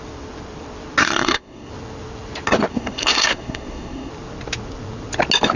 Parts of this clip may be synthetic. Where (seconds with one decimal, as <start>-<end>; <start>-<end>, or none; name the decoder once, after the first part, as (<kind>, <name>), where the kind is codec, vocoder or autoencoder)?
1.0-1.7 (codec, SNAC); 2.7-4.1